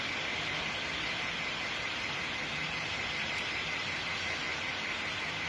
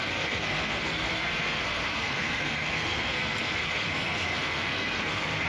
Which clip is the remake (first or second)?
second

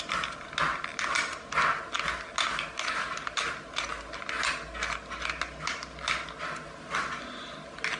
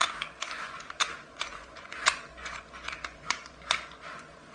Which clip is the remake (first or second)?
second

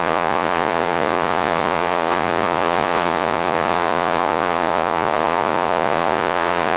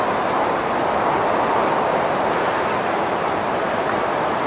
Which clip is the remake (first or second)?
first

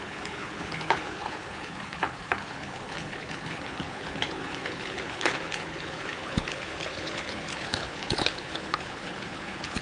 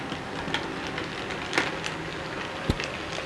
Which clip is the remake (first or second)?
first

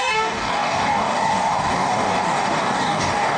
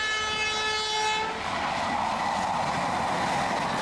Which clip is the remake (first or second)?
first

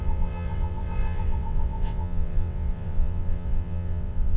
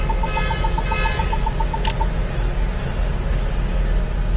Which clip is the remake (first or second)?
first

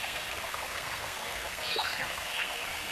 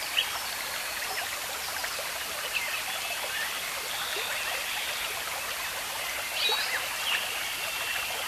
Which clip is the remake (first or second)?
first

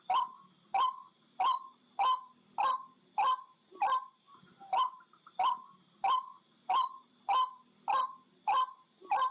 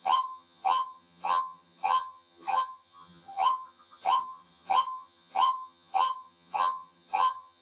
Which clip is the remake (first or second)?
second